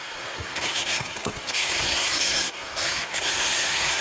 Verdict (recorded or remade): remade